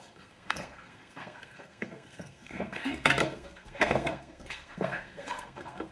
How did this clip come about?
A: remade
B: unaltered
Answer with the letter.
A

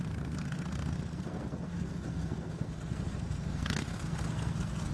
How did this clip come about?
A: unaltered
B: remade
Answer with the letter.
B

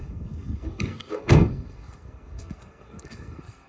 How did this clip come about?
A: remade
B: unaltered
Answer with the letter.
A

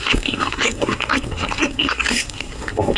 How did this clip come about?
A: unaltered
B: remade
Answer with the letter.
B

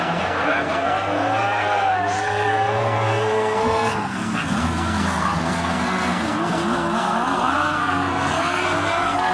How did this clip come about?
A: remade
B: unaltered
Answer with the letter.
A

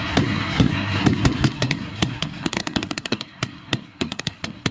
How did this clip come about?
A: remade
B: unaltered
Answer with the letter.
A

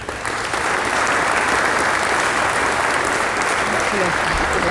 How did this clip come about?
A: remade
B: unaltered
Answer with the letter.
B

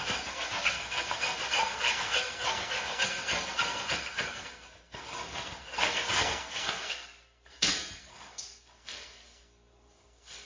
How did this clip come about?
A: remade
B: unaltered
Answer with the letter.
A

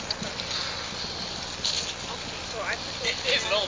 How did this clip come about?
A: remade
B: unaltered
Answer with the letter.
B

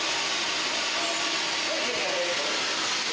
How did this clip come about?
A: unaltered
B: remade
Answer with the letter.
A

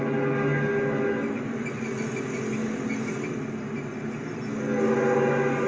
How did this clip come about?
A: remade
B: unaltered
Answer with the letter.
B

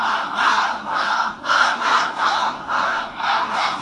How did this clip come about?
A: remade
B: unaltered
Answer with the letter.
A